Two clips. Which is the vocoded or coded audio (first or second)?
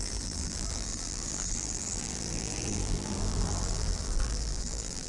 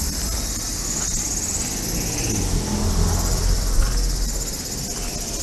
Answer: first